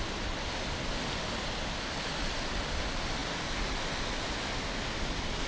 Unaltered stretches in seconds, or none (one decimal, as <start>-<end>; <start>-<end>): 0.0-2.1; 2.6-5.5